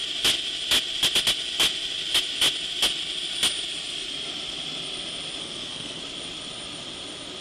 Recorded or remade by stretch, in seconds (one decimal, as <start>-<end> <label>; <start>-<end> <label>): 0.0-5.4 recorded; 5.4-6.0 remade; 6.0-7.4 recorded